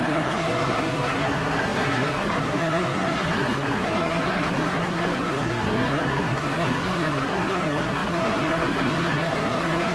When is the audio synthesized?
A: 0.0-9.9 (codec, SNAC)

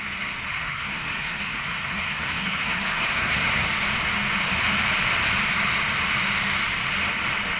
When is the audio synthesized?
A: 0.5-3.7 (codec, SNAC)

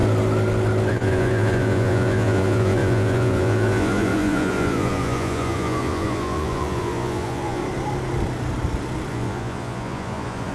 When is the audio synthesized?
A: 0.9-7.6 (vocoder, Vocos); 9.1-10.5

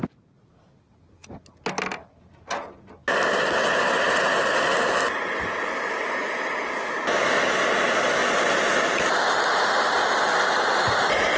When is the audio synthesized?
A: none

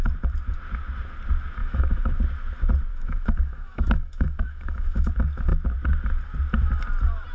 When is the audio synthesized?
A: 1.6-2.2 (autoencoder, DAC-VAE); 2.9-5.1